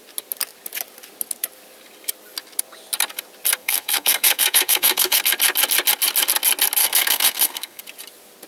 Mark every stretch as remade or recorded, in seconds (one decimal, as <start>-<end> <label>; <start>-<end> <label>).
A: 0.0-3.6 recorded; 3.6-5.2 remade; 5.2-6.8 recorded; 6.8-7.8 remade; 7.8-8.5 recorded